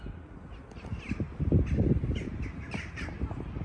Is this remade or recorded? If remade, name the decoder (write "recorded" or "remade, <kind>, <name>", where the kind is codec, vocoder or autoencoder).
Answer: recorded